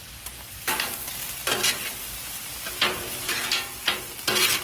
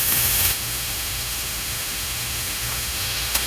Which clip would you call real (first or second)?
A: first